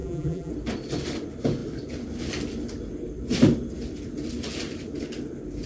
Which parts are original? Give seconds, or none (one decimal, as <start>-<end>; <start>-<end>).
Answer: 0.5-5.7